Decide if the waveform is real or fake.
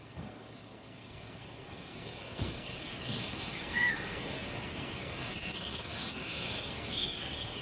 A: fake